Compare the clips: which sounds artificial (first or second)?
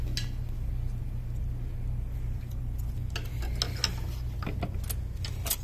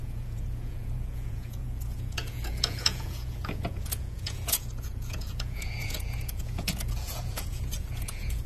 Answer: second